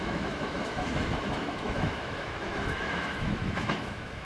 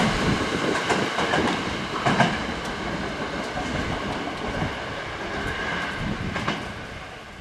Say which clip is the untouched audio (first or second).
second